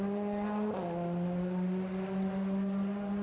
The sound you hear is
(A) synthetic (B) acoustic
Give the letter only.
B